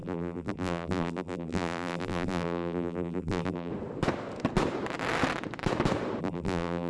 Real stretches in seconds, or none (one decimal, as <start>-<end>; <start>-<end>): 3.7-6.2